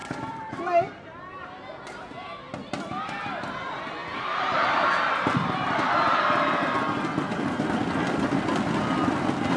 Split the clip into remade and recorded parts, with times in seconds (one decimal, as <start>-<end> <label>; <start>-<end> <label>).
0.0-1.2 remade; 1.2-4.0 recorded; 4.0-5.1 remade; 5.1-6.6 recorded; 6.6-8.7 remade; 8.7-9.6 recorded